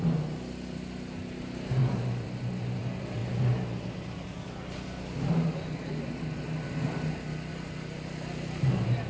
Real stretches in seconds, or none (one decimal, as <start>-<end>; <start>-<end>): 0.0-7.5; 8.7-9.1

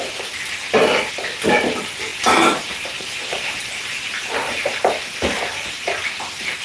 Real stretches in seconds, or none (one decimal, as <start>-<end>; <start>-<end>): 0.0-2.1; 4.8-6.6